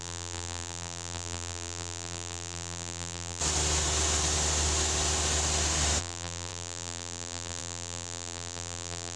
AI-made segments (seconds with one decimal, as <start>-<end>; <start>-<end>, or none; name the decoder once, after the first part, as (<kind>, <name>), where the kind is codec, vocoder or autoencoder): 0.0-3.4 (vocoder, BigVGAN v2); 6.0-9.2